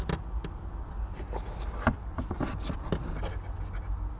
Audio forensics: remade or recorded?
recorded